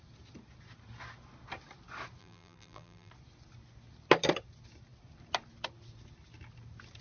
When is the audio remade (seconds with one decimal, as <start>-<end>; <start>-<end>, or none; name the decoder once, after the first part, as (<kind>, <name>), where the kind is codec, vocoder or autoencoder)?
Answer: 2.2-3.1 (vocoder, BigVGAN v2)